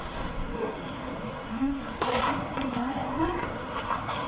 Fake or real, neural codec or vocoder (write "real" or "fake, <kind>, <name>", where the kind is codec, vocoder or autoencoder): fake, codec, SNAC